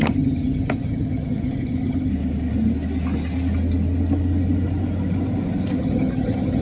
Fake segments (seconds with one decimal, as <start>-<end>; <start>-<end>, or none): 0.0-2.1; 5.8-6.6